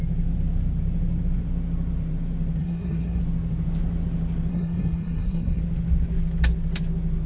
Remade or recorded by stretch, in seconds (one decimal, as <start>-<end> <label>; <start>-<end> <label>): 0.0-2.6 recorded; 2.6-3.2 remade; 3.2-4.5 recorded; 4.5-5.6 remade; 5.6-7.3 recorded